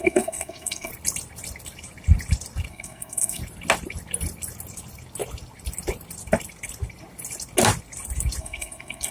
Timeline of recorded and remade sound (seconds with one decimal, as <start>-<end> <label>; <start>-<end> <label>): 0.0-0.9 remade; 0.9-2.7 recorded; 2.7-3.4 remade; 3.4-8.4 recorded; 8.4-9.1 remade